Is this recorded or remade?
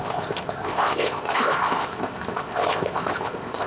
remade